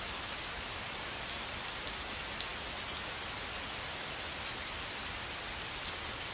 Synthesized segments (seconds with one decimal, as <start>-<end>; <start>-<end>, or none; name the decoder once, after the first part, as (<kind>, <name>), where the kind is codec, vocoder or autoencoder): none